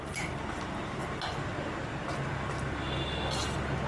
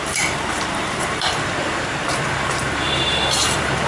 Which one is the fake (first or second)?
second